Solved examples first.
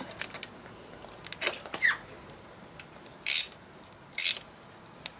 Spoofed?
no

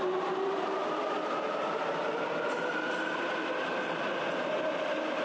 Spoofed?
no